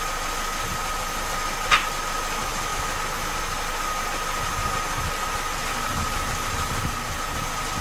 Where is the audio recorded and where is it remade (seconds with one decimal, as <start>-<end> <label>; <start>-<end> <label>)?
0.0-7.8 recorded